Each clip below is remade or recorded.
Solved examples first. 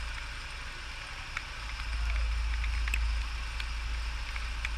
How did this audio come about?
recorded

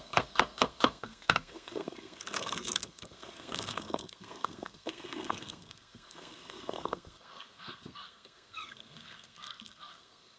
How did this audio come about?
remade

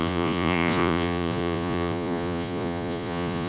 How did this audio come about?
remade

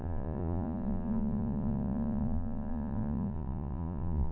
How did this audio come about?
remade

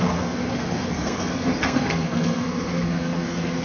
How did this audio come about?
remade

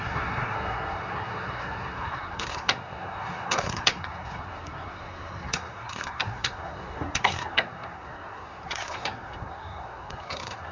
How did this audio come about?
remade